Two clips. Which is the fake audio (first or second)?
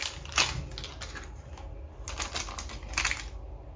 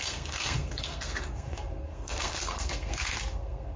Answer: second